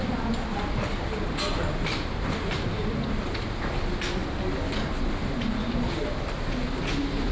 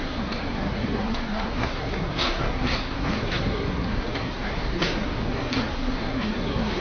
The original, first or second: first